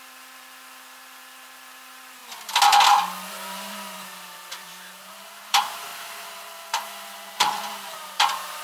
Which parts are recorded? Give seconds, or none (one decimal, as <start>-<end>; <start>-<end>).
2.2-3.3